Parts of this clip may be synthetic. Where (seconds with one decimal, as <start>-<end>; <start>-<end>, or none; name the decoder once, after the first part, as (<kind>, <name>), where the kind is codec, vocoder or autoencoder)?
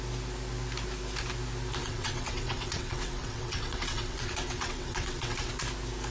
1.8-5.5 (vocoder, WaveNeXt)